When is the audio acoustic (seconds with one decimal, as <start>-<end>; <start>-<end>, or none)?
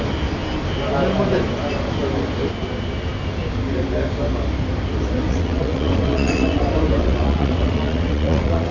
0.0-5.3; 6.6-7.0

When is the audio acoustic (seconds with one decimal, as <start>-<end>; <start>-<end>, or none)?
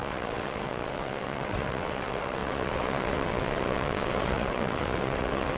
none